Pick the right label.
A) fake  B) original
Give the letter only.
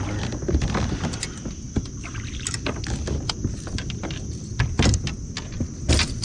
B